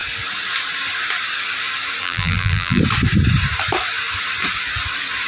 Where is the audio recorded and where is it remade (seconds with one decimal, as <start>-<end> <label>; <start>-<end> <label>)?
0.0-2.0 recorded; 2.0-2.8 remade; 2.8-5.3 recorded